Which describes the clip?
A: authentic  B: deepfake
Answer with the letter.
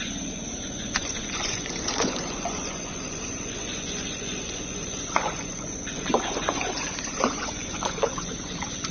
B